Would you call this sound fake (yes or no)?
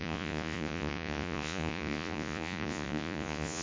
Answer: yes